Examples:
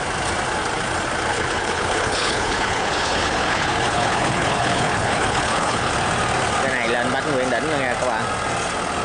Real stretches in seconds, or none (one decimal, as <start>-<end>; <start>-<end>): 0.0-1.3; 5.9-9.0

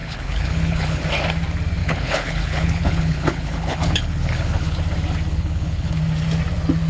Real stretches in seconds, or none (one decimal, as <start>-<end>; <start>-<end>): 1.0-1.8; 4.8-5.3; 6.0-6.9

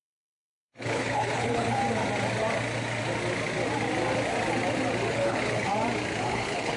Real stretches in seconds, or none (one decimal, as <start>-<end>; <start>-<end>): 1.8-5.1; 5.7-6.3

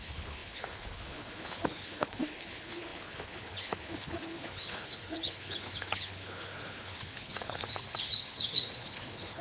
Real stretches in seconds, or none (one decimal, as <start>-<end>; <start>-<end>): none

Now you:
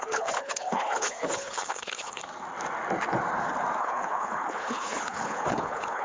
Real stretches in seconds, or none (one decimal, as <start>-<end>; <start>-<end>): 2.2-3.8

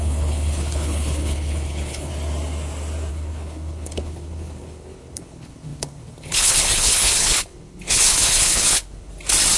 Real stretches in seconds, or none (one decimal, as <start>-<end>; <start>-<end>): 2.1-3.1; 9.1-9.6

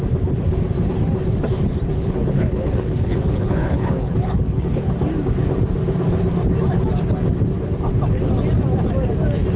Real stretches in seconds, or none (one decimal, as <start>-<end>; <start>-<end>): 0.0-1.9; 4.9-9.6

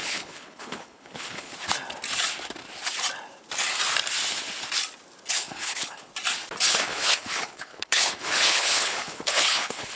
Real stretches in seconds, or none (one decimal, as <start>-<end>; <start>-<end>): 1.5-5.3; 6.1-6.7